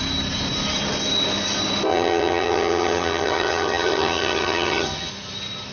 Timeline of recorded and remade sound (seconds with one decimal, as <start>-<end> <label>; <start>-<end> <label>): 0.0-1.9 recorded; 1.9-5.1 remade; 5.1-5.7 recorded